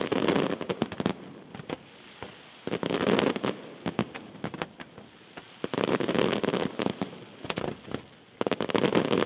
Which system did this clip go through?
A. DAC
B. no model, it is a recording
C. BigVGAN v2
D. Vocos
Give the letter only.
B